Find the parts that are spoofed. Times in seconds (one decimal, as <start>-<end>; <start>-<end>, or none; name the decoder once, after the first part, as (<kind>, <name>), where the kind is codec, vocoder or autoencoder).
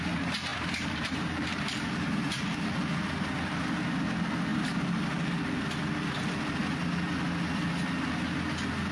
0.5-2.2 (vocoder, BigVGAN v2); 4.5-5.1